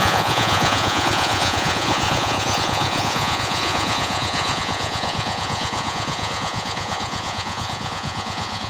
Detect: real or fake fake